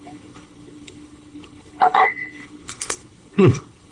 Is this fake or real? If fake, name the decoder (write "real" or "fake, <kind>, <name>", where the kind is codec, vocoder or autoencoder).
fake, codec, HILCodec